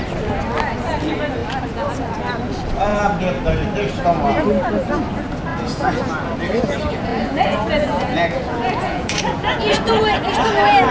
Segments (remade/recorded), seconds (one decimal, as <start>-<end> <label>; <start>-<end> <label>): 0.0-5.5 recorded; 5.5-6.0 remade; 6.0-7.1 recorded; 7.1-10.0 remade; 10.0-10.9 recorded